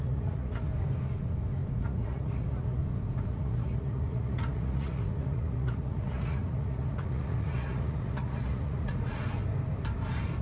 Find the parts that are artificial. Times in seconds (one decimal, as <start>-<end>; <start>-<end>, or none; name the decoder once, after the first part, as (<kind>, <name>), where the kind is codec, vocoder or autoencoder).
0.0-0.7 (vocoder, Vocos); 1.8-2.8; 3.3-9.2